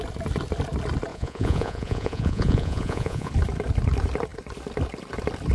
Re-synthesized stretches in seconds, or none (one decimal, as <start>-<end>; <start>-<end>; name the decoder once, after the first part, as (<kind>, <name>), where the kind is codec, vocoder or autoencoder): 1.1-3.3 (vocoder, Vocos)